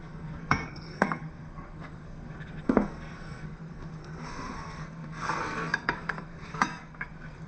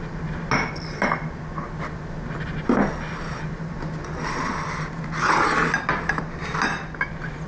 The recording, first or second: second